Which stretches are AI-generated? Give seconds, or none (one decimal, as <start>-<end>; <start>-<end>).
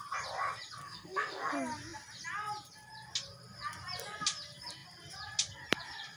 0.8-1.5